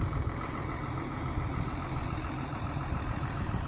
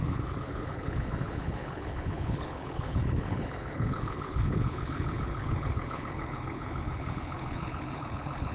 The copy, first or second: second